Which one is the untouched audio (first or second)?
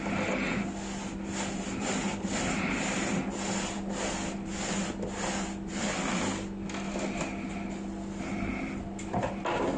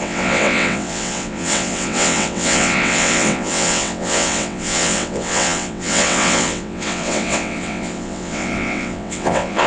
first